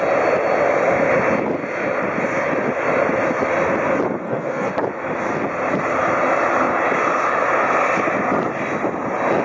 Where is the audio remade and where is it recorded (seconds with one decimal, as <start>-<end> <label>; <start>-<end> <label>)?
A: 0.0-4.2 recorded; 4.2-4.7 remade; 4.7-9.4 recorded